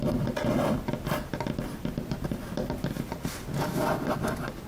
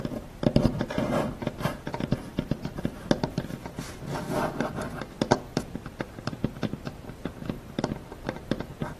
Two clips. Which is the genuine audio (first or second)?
first